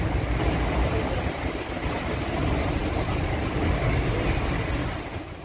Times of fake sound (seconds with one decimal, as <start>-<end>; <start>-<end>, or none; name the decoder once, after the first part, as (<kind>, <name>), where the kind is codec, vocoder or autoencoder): none

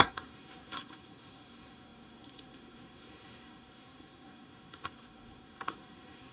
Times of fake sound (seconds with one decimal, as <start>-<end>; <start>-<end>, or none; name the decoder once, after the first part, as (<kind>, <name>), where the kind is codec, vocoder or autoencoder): 0.0-6.3 (codec, SNAC)

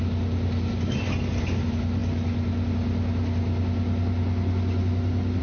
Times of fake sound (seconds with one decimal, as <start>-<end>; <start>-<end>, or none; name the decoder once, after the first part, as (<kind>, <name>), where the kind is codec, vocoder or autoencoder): none